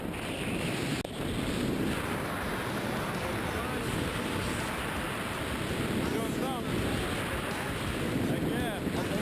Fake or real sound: real